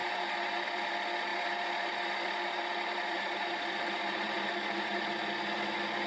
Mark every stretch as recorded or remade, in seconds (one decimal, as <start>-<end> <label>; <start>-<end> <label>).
0.0-0.9 remade; 0.9-1.3 recorded; 1.3-5.0 remade; 5.0-6.1 recorded